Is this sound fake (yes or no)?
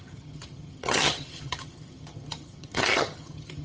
yes